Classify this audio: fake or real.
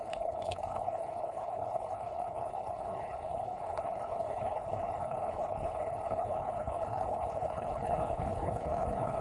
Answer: fake